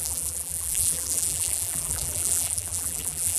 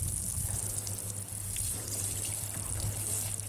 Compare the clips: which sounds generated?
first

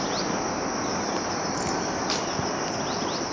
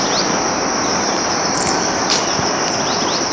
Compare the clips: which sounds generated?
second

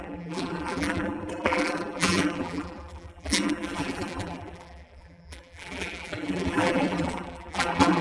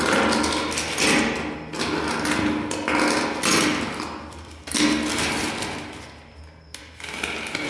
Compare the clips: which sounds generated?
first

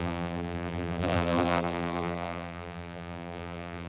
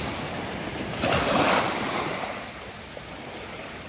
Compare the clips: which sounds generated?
first